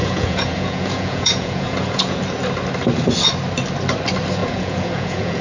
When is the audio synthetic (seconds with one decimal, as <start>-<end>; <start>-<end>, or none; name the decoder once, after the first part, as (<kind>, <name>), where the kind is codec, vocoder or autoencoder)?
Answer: 0.0-2.2 (vocoder, Vocos); 4.4-5.4